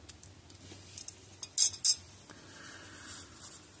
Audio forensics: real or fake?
real